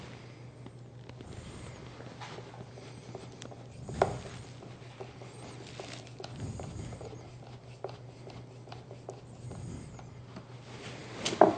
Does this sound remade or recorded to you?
recorded